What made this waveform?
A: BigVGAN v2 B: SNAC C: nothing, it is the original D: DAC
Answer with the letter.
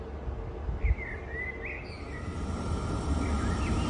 C